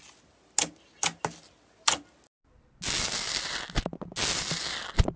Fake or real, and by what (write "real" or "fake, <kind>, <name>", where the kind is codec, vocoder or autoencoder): real